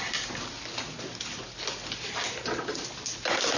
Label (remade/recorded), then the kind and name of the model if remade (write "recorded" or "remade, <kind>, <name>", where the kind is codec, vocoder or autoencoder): recorded